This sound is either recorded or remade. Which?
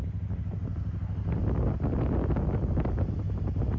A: recorded